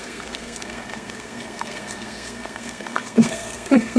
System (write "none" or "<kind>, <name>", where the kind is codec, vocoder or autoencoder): codec, SNAC